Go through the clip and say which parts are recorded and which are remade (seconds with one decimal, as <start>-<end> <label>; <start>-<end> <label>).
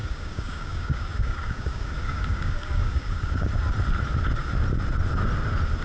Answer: 0.0-3.5 remade; 3.5-5.8 recorded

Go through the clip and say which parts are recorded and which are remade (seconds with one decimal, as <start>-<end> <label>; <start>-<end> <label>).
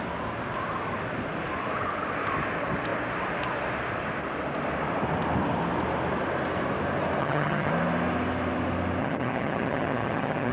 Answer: 0.0-7.2 recorded; 7.2-7.7 remade; 7.7-9.0 recorded; 9.0-10.5 remade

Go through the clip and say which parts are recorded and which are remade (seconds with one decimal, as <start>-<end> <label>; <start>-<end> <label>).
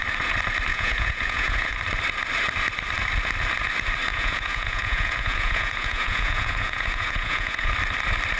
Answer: 0.0-0.7 recorded; 0.7-1.8 remade; 1.8-4.1 recorded; 4.1-7.7 remade; 7.7-8.4 recorded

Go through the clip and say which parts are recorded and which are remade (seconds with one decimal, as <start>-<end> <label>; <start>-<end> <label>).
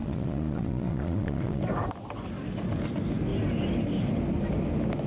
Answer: 0.0-1.6 remade; 1.6-5.1 recorded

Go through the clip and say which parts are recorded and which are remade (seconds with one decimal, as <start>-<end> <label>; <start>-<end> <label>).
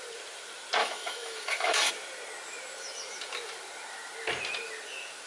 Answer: 0.0-0.8 recorded; 0.8-1.9 remade; 1.9-5.3 recorded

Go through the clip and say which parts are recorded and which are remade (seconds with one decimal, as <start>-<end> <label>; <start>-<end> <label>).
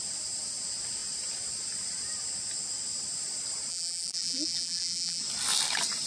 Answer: 0.0-3.7 recorded; 3.7-5.2 remade; 5.2-6.1 recorded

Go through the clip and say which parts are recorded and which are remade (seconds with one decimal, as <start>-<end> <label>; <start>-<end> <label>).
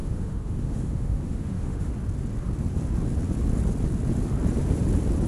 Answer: 0.0-1.9 remade; 1.9-5.3 recorded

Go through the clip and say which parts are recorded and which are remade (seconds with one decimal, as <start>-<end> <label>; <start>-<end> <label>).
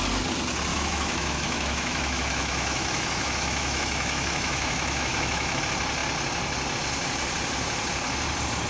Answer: 0.0-0.7 recorded; 0.7-5.6 remade; 5.6-8.7 recorded